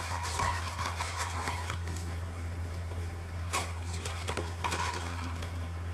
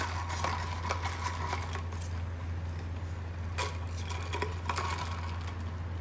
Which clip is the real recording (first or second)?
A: second